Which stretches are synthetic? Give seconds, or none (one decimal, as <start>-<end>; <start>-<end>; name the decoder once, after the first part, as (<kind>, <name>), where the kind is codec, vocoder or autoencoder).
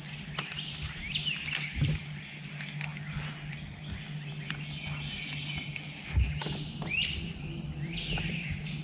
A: none